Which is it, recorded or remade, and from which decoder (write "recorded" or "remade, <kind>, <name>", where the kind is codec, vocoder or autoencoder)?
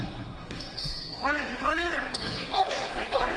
remade, codec, SNAC